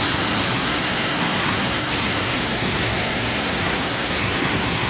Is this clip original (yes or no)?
no